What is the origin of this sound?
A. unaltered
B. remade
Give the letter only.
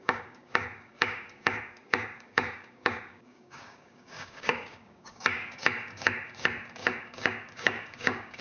B